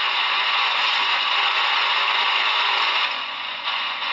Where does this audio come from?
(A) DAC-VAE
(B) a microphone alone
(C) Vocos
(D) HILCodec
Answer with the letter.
C